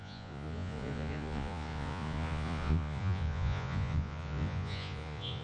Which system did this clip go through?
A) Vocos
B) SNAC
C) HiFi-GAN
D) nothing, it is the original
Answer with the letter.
A